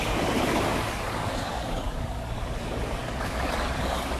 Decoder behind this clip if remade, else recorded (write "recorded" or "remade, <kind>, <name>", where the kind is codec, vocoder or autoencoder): remade, codec, DAC